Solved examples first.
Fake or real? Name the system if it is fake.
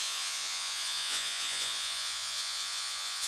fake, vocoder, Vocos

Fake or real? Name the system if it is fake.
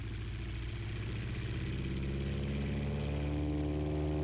real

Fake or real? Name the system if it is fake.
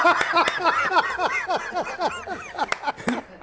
real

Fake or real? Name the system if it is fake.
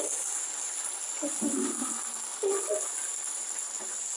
real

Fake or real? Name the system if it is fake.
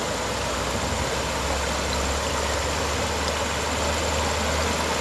real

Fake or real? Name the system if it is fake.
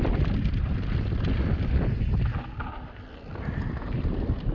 real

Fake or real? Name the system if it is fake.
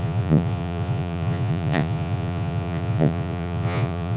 fake, vocoder, Vocos